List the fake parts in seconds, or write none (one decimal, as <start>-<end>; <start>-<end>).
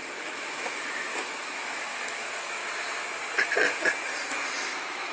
0.0-2.6; 4.3-5.1